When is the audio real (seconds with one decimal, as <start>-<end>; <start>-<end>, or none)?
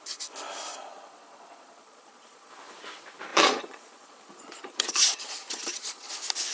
0.0-0.7; 2.5-3.3; 6.1-6.5